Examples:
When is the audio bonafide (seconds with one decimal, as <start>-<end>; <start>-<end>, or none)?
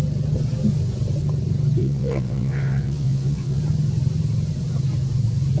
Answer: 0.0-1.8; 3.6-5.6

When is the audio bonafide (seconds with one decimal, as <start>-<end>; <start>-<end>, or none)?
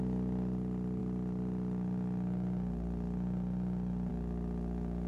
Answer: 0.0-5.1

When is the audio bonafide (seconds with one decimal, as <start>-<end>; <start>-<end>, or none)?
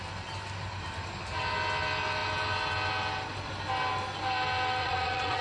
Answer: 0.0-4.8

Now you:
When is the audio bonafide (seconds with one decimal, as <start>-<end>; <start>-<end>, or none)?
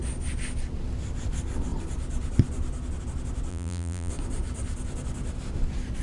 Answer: 0.0-3.5; 4.1-6.0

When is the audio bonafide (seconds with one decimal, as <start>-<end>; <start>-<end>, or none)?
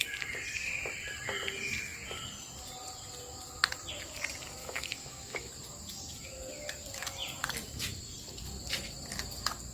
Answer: 0.0-4.6; 5.5-9.7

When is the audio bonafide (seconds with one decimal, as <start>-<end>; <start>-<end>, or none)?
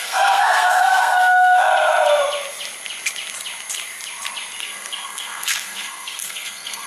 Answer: 1.7-4.6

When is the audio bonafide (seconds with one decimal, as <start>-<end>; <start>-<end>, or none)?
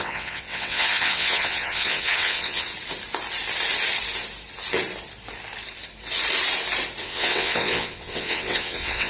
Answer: 2.7-7.0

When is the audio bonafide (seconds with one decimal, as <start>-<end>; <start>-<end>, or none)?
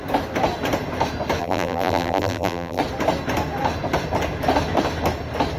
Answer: 0.0-1.4; 2.8-5.6